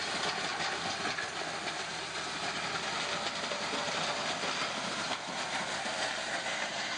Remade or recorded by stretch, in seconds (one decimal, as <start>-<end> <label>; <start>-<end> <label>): 0.0-7.0 recorded